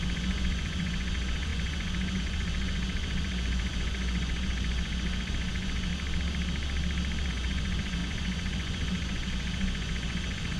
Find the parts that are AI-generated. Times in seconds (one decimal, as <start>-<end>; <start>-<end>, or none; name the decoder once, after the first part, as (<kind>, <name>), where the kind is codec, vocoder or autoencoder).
0.0-5.9 (vocoder, Vocos); 7.3-10.6